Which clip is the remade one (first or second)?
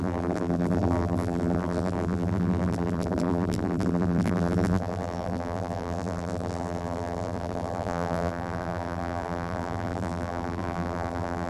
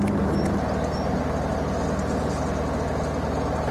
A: first